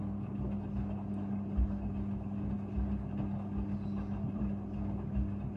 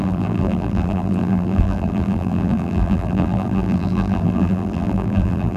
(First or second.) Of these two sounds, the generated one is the second